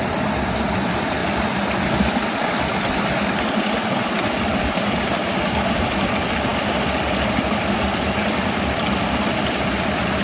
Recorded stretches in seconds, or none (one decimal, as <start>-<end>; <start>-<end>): 1.2-3.5